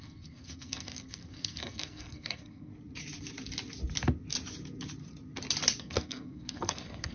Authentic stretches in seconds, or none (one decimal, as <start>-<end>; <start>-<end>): 2.7-5.8